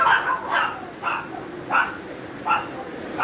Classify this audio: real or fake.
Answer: real